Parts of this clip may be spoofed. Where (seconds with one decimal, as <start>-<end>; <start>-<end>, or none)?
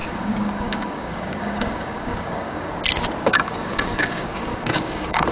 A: 0.0-2.7; 3.2-5.3